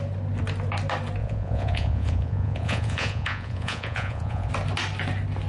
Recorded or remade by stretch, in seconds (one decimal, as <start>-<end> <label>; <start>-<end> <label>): 0.0-1.2 recorded; 1.2-4.5 remade; 4.5-5.5 recorded